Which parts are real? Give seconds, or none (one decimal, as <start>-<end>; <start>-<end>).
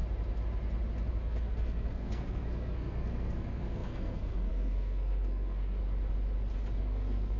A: 0.0-1.1; 5.8-6.8